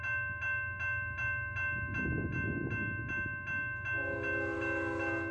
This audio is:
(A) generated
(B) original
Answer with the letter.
B